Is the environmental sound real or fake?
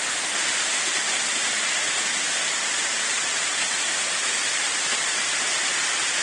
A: fake